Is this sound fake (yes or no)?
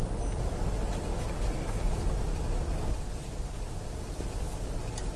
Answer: no